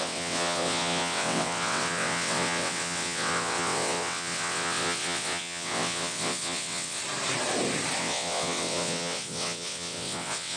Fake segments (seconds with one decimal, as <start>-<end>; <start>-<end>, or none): 0.0-7.0; 8.0-10.6